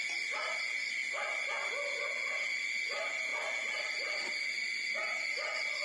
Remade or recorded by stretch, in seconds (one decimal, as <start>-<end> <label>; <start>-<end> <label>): 0.0-5.8 recorded